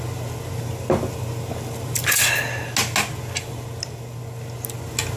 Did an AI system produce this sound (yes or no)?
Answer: no